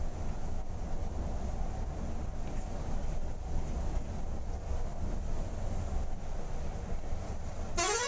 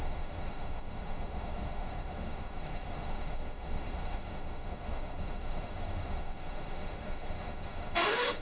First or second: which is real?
first